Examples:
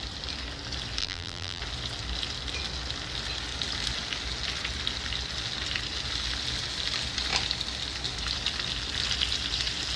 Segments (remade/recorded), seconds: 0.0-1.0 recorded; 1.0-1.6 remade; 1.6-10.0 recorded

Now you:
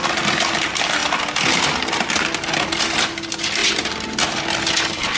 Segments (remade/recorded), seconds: 0.0-5.2 recorded

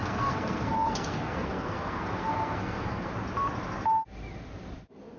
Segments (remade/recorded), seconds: 0.0-3.1 remade; 3.1-5.2 recorded

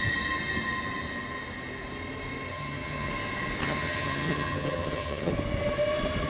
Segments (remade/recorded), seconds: 0.0-2.5 recorded; 2.5-3.1 remade; 3.1-3.6 recorded; 3.6-5.3 remade; 5.3-6.3 recorded

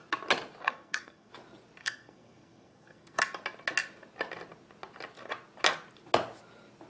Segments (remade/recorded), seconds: 0.0-0.6 recorded; 0.6-1.3 remade; 1.3-1.8 recorded; 1.8-3.2 remade; 3.2-6.9 recorded